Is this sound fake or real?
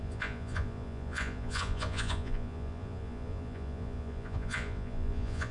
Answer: fake